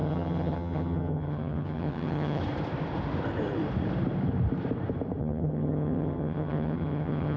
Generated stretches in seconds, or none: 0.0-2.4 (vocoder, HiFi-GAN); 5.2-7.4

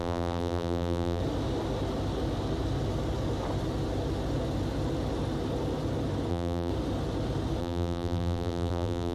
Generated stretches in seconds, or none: 0.0-1.2 (vocoder, BigVGAN v2); 6.3-6.7; 7.6-9.1

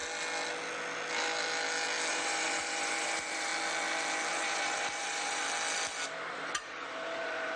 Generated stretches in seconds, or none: 2.1-3.5 (vocoder, BigVGAN v2); 4.3-5.4; 6.3-7.6

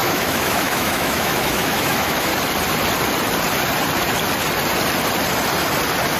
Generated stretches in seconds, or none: 0.0-2.3 (autoencoder, DAC-VAE)

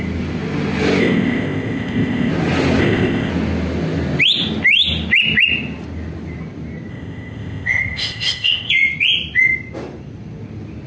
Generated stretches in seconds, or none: 1.0-2.3 (codec, ZipCodec); 2.8-3.3; 6.9-8.7

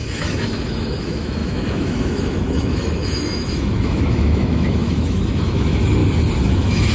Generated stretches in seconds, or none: 0.0-6.0 (autoencoder, DAC-VAE); 6.5-6.9

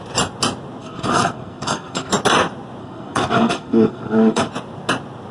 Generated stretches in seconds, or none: 0.8-2.1 (codec, SNAC); 2.8-4.5

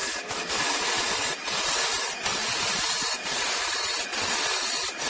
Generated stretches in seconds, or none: 0.0-0.8 (vocoder, BigVGAN v2); 2.3-4.1